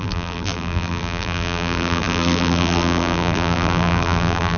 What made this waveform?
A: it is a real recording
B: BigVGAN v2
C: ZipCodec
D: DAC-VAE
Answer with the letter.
B